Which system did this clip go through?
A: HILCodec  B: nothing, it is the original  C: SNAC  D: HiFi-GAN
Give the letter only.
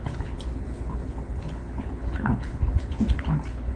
A